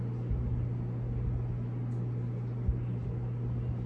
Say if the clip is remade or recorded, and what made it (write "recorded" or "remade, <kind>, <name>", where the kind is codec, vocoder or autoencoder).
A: recorded